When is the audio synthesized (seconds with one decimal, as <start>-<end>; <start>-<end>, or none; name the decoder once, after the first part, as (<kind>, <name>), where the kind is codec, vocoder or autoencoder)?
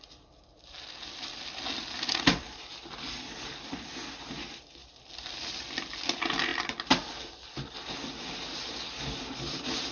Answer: none